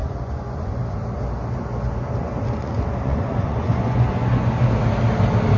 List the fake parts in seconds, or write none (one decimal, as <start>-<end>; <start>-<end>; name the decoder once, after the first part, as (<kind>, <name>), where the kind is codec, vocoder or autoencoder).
0.0-0.8 (vocoder, Vocos); 2.6-4.5